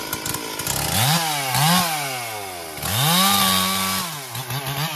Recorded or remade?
recorded